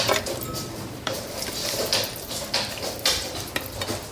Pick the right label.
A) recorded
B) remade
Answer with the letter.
A